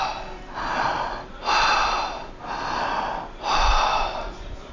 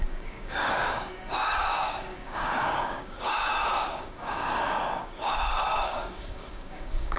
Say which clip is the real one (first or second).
first